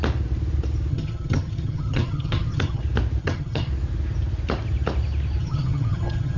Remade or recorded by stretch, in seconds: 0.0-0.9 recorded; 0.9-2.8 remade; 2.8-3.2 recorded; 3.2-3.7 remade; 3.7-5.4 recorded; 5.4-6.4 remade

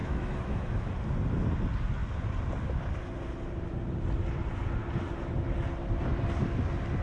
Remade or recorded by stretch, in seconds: 0.0-0.9 remade; 0.9-7.0 recorded

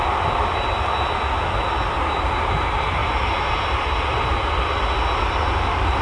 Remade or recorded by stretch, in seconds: 0.0-6.0 recorded

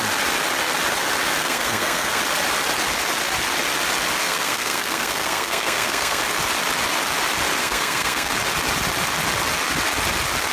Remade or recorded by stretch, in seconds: 0.0-1.4 recorded; 1.4-2.2 remade; 2.2-4.2 recorded; 4.2-6.2 remade; 6.2-7.6 recorded; 7.6-8.3 remade; 8.3-10.5 recorded

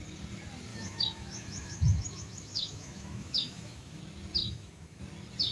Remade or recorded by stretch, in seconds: 0.0-0.7 recorded; 0.7-4.0 remade; 4.0-4.4 recorded; 4.4-5.0 remade; 5.0-5.5 recorded

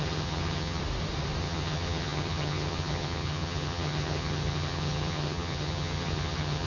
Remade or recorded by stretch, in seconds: 0.0-0.8 remade; 0.8-1.4 recorded; 1.4-6.7 remade

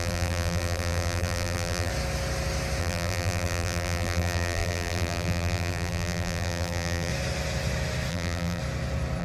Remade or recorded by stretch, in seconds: 0.0-1.9 remade; 1.9-2.8 recorded; 2.8-7.1 remade; 7.1-8.1 recorded; 8.1-8.6 remade; 8.6-9.2 recorded

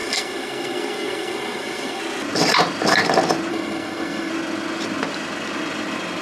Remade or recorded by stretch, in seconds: 0.0-2.0 remade; 2.0-3.5 recorded; 3.5-4.3 remade; 4.3-6.2 recorded